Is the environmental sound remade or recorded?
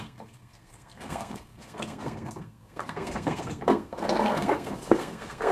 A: remade